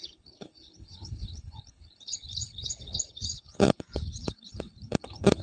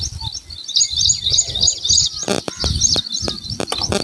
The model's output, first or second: first